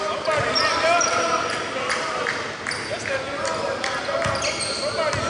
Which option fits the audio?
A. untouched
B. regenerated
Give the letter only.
A